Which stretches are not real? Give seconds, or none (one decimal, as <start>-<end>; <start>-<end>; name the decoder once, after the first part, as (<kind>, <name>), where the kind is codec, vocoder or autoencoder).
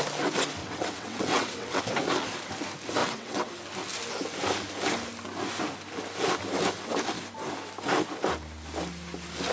0.6-1.8 (vocoder, WaveNeXt); 3.0-3.5